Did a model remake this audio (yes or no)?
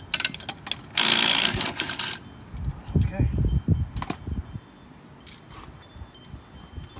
no